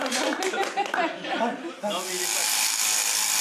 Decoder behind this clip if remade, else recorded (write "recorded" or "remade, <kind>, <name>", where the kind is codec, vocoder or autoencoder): remade, vocoder, BigVGAN v2